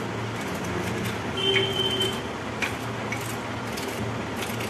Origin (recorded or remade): recorded